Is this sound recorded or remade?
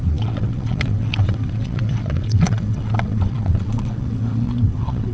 remade